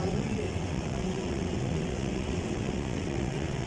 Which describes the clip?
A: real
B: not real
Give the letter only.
B